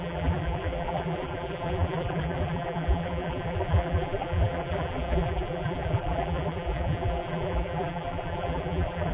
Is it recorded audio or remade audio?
remade